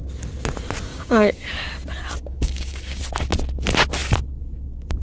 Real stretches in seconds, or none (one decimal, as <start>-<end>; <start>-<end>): 0.0-0.9; 1.5-2.2; 3.0-5.0